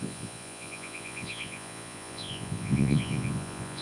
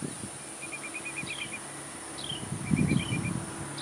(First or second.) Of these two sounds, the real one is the second